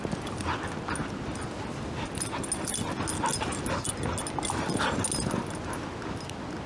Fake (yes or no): no